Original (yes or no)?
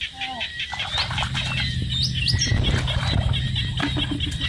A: yes